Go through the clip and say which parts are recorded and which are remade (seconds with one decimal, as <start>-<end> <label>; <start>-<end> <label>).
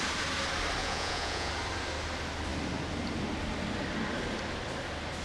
0.0-0.8 recorded; 0.8-1.5 remade; 1.5-5.2 recorded